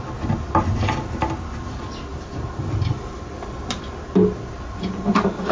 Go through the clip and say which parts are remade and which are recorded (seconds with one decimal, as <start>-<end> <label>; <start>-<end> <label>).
0.0-2.1 recorded; 2.1-3.8 remade; 3.8-5.5 recorded